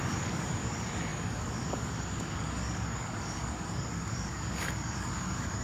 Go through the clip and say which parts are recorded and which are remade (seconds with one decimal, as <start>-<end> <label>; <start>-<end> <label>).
0.0-5.6 remade